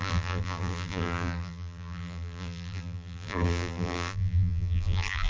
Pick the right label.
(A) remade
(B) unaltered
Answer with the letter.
A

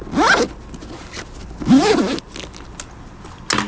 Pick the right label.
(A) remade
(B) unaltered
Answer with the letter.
B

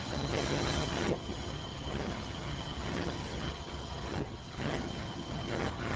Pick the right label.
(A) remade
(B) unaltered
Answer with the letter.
A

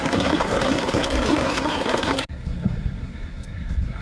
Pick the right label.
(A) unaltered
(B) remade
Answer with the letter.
B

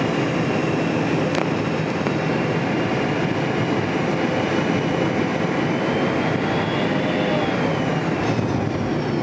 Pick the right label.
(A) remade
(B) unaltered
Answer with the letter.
B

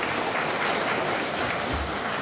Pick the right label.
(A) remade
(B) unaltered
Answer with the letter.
B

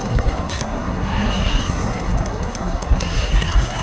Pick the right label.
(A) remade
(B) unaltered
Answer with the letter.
A